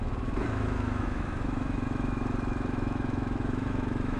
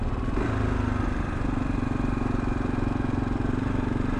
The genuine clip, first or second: second